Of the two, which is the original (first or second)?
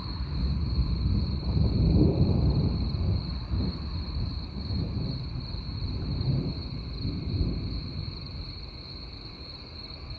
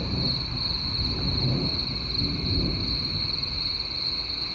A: second